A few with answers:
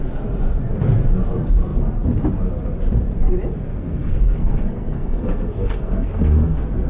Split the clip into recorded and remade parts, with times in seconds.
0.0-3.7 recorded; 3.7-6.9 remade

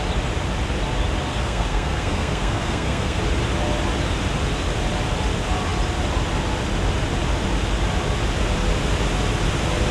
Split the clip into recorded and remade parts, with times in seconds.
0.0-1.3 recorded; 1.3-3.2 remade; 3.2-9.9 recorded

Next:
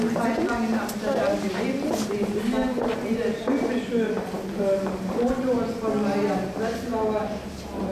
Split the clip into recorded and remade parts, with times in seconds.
0.0-7.9 recorded

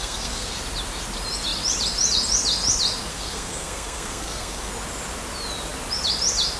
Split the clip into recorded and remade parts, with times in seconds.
0.0-0.6 remade; 0.6-3.1 recorded; 3.1-4.7 remade; 4.7-6.6 recorded

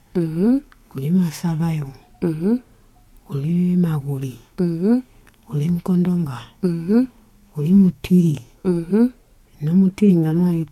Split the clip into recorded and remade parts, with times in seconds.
0.0-2.0 remade; 2.0-4.0 recorded; 4.0-8.9 remade; 8.9-10.1 recorded; 10.1-10.7 remade